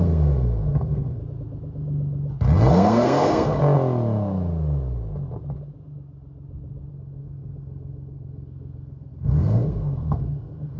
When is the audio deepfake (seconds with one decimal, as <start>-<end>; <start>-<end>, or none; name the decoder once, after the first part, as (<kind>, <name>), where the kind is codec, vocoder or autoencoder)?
0.0-1.2 (codec, SNAC); 2.7-3.6; 6.9-10.8